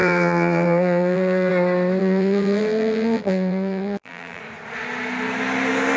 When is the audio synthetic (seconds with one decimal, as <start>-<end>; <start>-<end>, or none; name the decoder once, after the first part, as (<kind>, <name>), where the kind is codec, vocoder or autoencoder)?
0.0-1.5 (vocoder, BigVGAN v2); 2.0-4.4